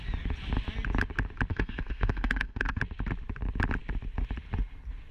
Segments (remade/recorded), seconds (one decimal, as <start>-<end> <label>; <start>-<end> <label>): 0.0-1.5 recorded; 1.5-2.8 remade; 2.8-5.1 recorded